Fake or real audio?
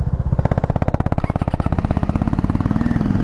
real